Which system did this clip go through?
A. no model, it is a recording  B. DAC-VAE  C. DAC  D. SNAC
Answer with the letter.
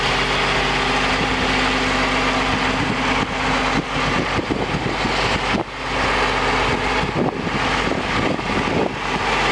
A